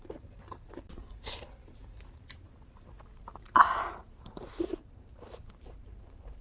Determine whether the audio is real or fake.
fake